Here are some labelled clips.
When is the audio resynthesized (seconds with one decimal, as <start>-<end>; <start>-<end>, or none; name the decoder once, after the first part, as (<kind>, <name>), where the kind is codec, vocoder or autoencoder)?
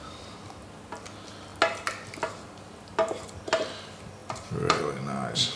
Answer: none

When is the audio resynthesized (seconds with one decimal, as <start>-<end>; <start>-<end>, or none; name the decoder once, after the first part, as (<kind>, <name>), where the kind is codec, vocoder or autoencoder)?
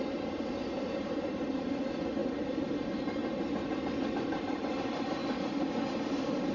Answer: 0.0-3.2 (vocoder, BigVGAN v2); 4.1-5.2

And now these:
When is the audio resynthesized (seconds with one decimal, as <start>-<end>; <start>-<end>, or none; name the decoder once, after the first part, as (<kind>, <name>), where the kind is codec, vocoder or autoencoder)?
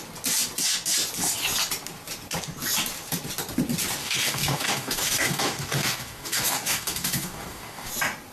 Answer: 4.0-7.9 (codec, DAC)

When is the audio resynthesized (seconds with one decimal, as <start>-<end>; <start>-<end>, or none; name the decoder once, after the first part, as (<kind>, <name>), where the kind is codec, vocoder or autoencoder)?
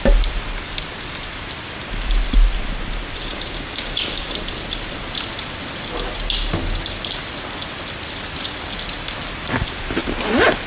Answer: 3.3-4.3 (codec, DAC)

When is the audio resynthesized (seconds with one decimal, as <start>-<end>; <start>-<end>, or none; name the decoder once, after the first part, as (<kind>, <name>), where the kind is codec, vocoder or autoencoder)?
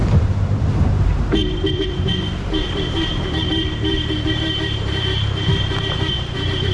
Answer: 0.0-6.7 (vocoder, BigVGAN v2)